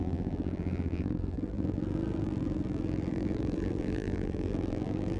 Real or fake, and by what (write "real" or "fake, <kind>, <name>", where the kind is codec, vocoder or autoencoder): fake, vocoder, BigVGAN v2